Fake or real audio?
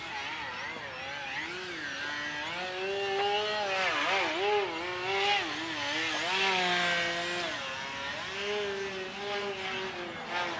real